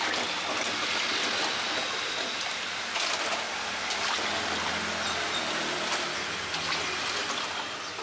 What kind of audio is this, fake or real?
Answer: real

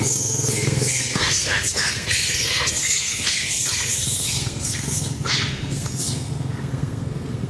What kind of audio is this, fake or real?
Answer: fake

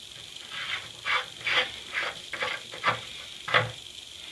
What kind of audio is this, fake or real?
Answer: real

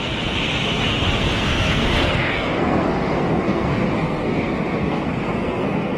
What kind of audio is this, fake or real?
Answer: fake